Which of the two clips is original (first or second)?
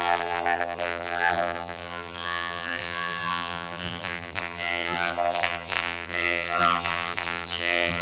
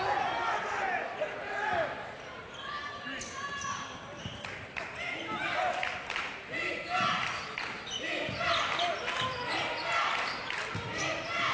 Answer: second